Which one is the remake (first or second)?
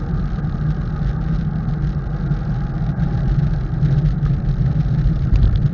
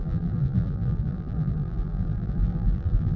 second